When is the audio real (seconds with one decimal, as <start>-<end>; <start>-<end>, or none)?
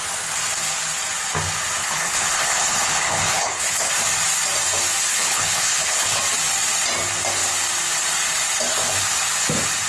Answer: 0.0-1.8; 3.9-5.1; 6.2-9.9